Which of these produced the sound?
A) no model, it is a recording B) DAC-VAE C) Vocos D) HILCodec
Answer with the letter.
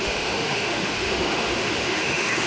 B